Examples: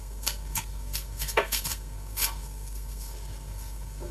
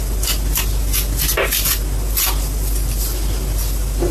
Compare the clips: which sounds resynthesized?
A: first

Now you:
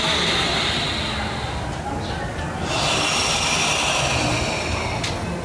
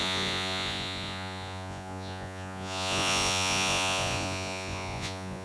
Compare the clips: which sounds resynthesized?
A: second